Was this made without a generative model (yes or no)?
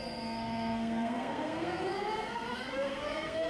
no